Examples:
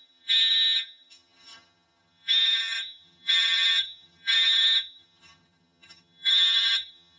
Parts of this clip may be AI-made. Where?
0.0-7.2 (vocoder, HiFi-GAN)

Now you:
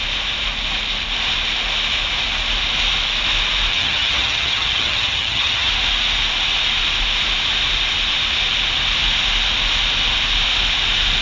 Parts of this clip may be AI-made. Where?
3.7-5.7 (vocoder, HiFi-GAN)

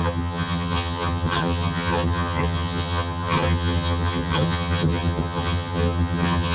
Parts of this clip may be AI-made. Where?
0.0-6.5 (vocoder, HiFi-GAN)

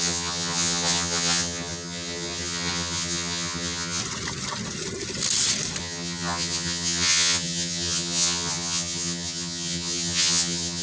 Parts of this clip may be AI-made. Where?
0.0-4.0 (vocoder, HiFi-GAN); 5.8-10.8

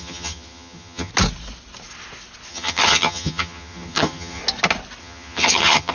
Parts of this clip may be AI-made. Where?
0.0-1.1 (vocoder, HiFi-GAN); 2.5-4.4; 5.0-5.9

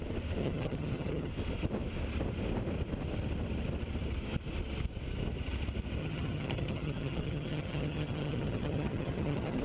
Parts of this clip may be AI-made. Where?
0.4-1.3 (vocoder, HiFi-GAN); 6.0-9.6